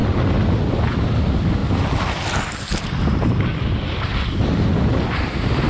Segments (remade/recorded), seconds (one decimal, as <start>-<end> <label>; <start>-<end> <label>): 0.0-5.7 recorded